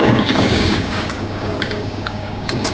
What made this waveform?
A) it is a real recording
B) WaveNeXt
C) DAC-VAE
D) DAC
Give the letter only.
D